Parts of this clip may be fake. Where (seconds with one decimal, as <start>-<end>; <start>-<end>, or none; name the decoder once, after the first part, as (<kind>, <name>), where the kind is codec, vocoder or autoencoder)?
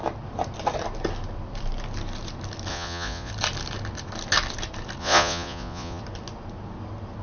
2.7-3.3 (vocoder, Vocos); 5.0-6.0